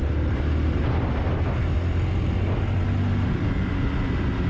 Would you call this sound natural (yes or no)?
yes